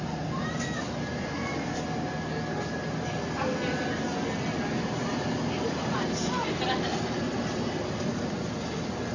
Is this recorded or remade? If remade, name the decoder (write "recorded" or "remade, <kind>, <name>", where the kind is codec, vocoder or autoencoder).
recorded